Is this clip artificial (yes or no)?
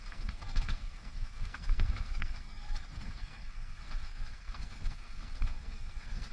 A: yes